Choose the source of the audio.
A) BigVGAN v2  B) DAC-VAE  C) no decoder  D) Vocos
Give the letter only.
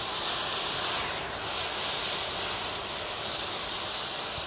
C